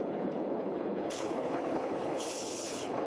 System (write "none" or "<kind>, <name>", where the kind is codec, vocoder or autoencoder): codec, HILCodec